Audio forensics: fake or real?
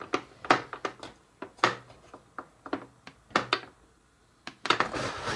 real